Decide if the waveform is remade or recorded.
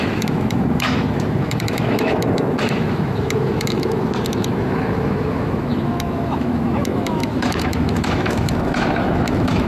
remade